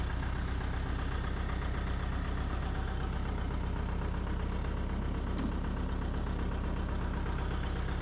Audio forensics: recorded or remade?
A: recorded